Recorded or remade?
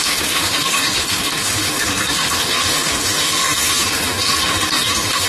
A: remade